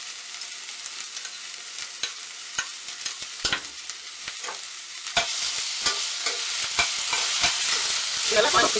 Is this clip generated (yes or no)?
no